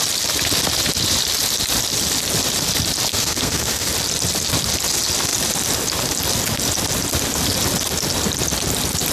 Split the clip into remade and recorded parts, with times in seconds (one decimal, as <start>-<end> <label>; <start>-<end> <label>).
0.0-3.1 recorded; 3.1-3.9 remade; 3.9-9.1 recorded